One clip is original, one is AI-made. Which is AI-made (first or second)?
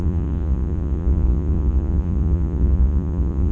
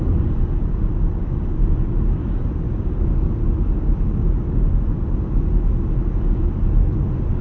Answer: first